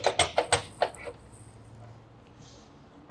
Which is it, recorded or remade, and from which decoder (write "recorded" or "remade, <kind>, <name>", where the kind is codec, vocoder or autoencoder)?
recorded